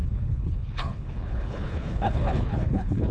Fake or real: fake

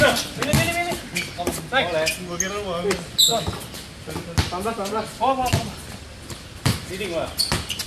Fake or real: real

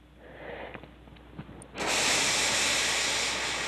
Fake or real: real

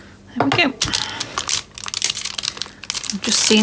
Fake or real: real